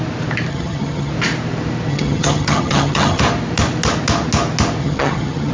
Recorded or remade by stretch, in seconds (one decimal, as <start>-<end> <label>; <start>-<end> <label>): 0.0-0.5 recorded; 0.5-1.1 remade; 1.1-1.9 recorded; 1.9-3.2 remade; 3.2-4.8 recorded; 4.8-5.5 remade